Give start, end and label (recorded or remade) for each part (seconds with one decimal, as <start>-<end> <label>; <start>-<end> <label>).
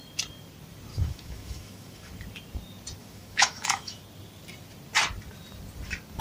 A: 0.0-0.9 recorded; 0.9-2.1 remade; 2.1-3.0 recorded; 3.0-4.0 remade; 4.0-6.2 recorded